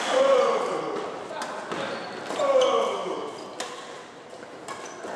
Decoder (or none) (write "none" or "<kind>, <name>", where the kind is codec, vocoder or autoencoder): none